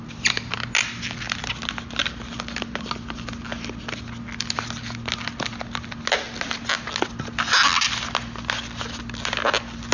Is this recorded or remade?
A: recorded